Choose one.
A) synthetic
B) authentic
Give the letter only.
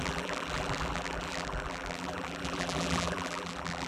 A